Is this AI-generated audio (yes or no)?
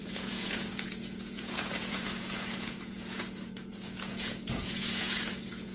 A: yes